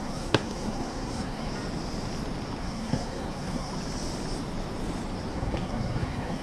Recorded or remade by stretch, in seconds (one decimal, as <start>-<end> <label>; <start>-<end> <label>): 0.0-1.5 remade; 1.5-2.6 recorded; 2.6-3.7 remade; 3.7-5.3 recorded; 5.3-6.4 remade